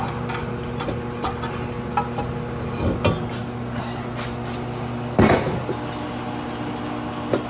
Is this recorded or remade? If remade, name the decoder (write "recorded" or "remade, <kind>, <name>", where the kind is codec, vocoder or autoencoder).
recorded